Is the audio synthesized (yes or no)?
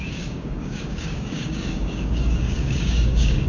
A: yes